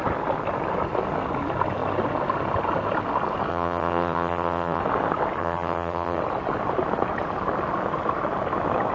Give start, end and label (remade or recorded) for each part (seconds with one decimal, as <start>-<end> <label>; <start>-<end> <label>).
0.0-3.5 recorded; 3.5-4.8 remade; 4.8-5.4 recorded; 5.4-6.2 remade; 6.2-8.9 recorded